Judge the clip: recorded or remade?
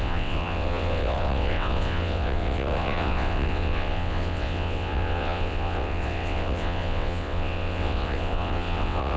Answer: remade